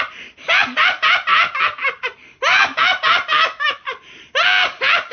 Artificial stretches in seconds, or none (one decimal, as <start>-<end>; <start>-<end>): 3.3-3.8